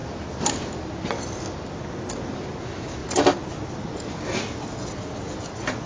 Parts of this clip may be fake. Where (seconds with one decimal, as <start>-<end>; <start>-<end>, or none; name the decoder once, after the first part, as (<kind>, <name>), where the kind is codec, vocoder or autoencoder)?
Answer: 2.6-3.0 (autoencoder, DAC-VAE)